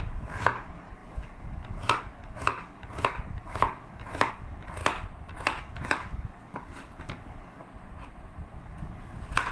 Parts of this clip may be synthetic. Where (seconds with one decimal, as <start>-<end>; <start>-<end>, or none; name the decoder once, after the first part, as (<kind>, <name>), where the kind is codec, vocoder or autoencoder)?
0.0-4.8 (codec, DAC); 5.6-7.6; 8.6-9.5